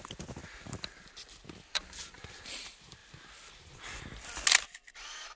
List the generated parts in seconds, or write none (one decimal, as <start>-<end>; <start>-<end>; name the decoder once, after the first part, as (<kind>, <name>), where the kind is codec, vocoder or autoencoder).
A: 0.4-2.6 (vocoder, BigVGAN v2)